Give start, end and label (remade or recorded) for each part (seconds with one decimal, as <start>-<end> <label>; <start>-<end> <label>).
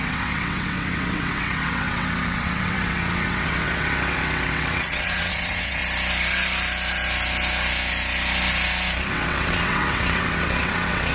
0.0-5.8 remade; 5.8-9.1 recorded; 9.1-11.1 remade